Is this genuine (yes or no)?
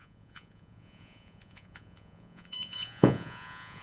no